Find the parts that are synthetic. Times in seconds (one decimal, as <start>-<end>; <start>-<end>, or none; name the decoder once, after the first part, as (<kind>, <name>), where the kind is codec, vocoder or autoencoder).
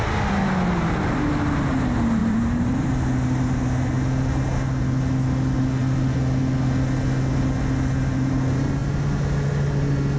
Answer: 2.2-2.9 (vocoder, BigVGAN v2)